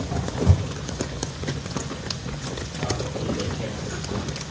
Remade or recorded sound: remade